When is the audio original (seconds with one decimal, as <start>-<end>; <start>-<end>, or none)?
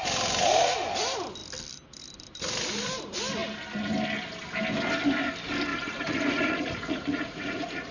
0.0-5.7